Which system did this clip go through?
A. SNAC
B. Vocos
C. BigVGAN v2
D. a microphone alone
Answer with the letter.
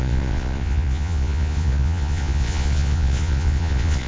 B